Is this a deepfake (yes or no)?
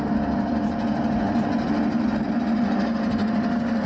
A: no